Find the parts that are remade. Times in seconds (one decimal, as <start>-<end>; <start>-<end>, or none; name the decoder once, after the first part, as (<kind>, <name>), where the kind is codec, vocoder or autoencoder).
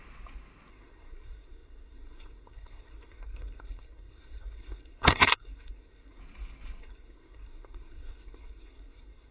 0.7-6.2 (codec, SNAC); 6.8-9.3